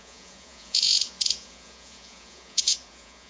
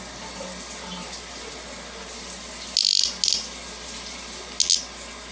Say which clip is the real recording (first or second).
second